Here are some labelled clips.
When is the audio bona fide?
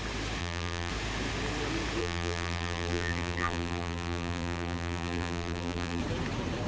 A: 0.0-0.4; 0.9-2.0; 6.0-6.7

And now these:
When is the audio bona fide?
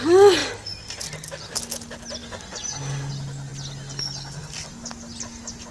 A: 0.0-2.2; 3.1-5.7